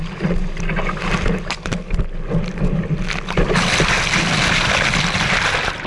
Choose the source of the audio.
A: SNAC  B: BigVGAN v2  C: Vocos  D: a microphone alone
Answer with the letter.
D